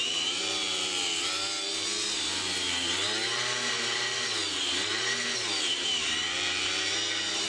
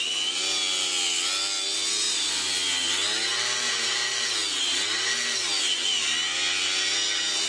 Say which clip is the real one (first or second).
second